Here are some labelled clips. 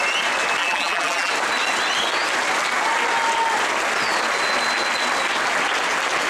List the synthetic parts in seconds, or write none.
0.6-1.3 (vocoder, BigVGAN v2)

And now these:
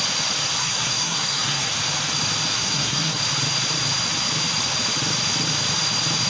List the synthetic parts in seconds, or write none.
0.6-1.7 (codec, SNAC); 2.5-3.2

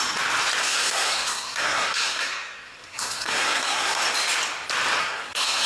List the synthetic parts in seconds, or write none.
0.6-4.0 (codec, SNAC); 5.0-5.7

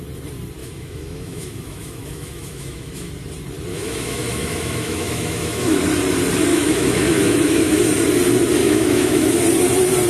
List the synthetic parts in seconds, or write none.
0.6-3.1 (autoencoder, DAC-VAE); 3.7-5.8; 6.5-7.8; 8.6-9.4